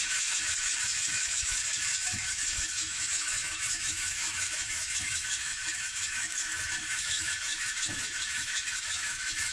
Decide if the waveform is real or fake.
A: fake